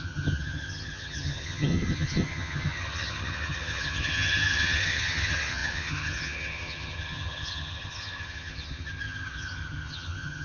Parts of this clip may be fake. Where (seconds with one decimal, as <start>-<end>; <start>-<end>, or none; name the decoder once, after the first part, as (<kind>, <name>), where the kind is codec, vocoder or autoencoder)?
0.0-10.4 (vocoder, HiFi-GAN)